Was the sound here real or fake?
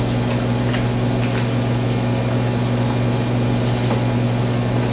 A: real